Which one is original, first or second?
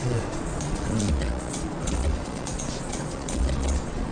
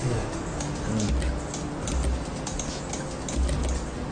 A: second